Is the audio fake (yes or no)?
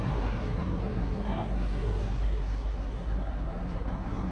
yes